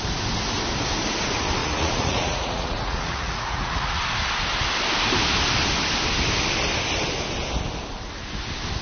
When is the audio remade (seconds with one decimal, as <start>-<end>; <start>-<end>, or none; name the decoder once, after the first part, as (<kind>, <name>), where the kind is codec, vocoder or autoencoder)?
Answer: 1.6-4.0 (vocoder, Vocos)